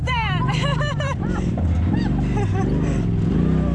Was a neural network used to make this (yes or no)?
yes